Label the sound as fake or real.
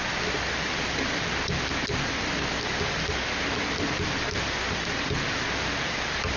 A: real